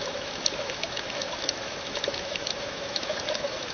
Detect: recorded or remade remade